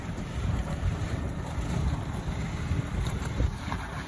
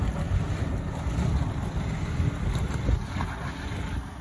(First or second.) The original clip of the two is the second